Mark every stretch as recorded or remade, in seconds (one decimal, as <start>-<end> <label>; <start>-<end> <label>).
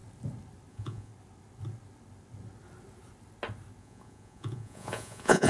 0.0-0.7 recorded; 0.7-1.1 remade; 1.1-3.8 recorded; 3.8-5.5 remade